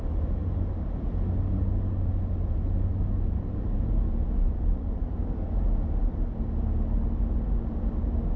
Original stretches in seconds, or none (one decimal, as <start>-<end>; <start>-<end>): 0.0-8.4